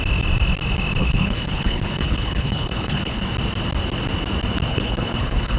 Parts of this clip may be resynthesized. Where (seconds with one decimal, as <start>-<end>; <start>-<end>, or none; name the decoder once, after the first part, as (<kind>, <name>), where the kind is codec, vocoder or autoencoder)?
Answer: 1.0-3.2 (codec, HILCodec); 4.7-5.6